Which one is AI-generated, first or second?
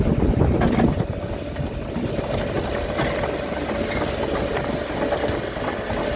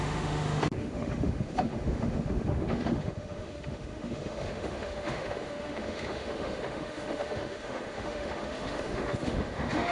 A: second